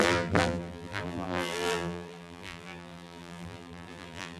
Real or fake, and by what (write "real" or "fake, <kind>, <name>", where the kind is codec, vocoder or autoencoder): fake, vocoder, BigVGAN v2